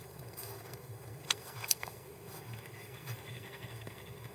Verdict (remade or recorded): remade